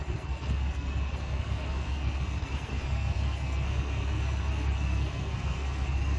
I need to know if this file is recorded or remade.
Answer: remade